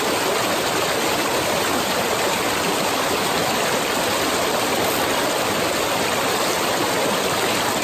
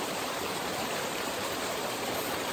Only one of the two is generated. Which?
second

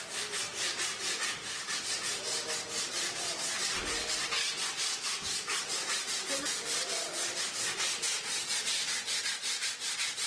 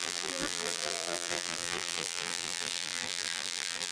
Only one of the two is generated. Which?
second